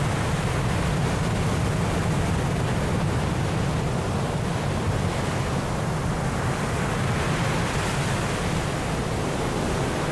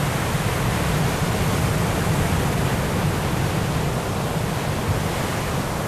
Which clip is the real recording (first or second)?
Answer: first